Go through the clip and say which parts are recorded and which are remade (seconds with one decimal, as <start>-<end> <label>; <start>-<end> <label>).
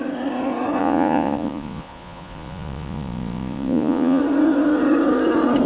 0.0-0.8 recorded; 0.8-4.2 remade; 4.2-5.7 recorded